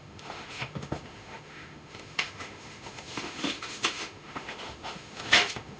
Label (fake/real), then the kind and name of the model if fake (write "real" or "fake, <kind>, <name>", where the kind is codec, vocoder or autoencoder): fake, autoencoder, DAC-VAE